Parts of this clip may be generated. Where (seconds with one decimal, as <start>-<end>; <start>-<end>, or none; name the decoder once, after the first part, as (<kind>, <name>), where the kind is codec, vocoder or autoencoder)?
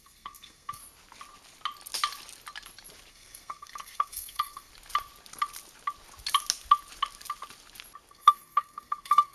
0.0-0.8 (codec, SNAC); 3.1-4.7; 8.1-9.3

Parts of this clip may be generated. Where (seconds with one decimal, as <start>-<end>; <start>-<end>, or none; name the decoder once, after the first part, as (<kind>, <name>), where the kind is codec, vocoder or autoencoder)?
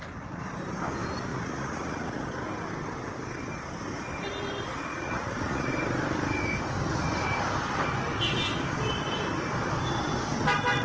1.3-2.4 (vocoder, Vocos); 4.9-5.7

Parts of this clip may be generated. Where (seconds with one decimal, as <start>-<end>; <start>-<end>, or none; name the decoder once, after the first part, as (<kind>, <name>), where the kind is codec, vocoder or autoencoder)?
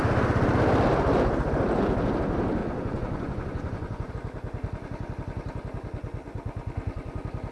2.6-4.1 (vocoder, Vocos)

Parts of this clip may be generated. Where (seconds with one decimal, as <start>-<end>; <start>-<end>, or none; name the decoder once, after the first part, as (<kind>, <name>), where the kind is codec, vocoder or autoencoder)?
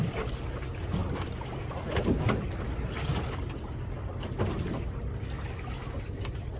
none